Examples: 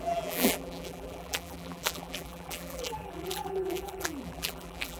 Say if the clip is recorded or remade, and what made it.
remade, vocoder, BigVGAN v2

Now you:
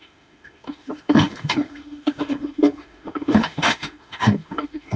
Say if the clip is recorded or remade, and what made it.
remade, autoencoder, DAC-VAE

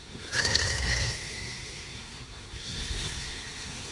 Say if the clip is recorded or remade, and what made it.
remade, codec, SNAC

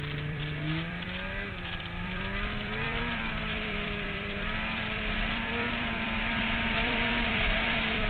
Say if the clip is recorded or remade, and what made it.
remade, vocoder, BigVGAN v2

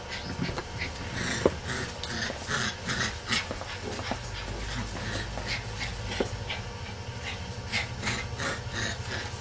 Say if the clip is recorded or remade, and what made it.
recorded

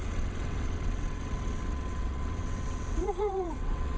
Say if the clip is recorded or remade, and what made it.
remade, vocoder, WaveNeXt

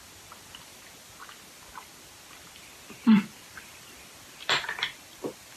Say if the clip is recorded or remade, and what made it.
recorded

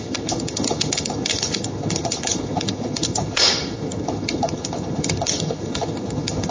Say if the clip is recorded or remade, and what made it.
remade, vocoder, HiFi-GAN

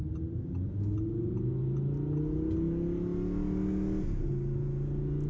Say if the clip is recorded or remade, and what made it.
recorded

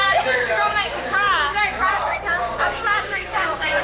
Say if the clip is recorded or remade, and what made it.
remade, codec, DAC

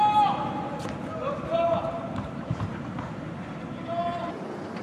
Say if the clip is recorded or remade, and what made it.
remade, vocoder, BigVGAN v2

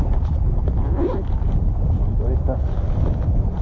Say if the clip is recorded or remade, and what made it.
remade, vocoder, BigVGAN v2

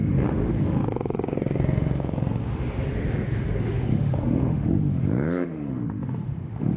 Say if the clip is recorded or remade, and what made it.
remade, autoencoder, DAC-VAE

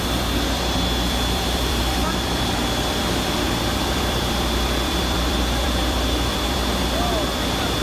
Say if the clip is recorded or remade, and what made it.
remade, vocoder, BigVGAN v2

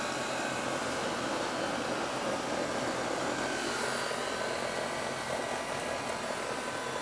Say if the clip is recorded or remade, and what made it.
recorded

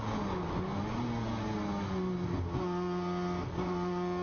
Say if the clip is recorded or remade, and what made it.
recorded